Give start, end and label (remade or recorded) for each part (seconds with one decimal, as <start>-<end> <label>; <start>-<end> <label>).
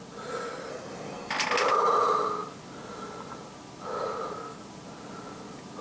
0.0-0.7 recorded; 0.7-1.3 remade; 1.3-5.8 recorded